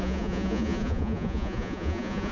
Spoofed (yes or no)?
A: yes